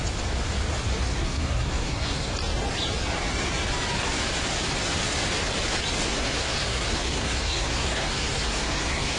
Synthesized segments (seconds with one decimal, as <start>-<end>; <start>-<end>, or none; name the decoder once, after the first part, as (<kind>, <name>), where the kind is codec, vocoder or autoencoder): 1.1-2.3 (codec, SNAC); 6.1-9.2